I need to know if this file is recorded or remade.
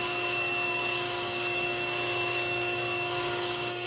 remade